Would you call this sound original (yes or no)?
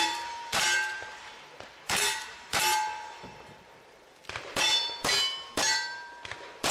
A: no